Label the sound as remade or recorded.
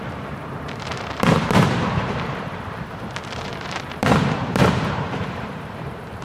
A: remade